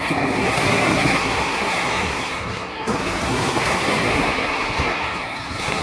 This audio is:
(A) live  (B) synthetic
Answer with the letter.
B